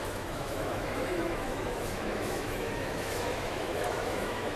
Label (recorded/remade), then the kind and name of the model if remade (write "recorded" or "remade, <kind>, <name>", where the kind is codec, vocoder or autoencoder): remade, autoencoder, DAC-VAE